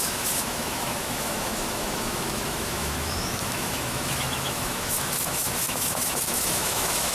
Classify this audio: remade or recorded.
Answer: remade